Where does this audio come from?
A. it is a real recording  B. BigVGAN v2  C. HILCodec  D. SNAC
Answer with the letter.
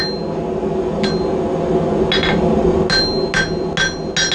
A